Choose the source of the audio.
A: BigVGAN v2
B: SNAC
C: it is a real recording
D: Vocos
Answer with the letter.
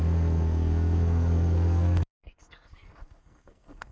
B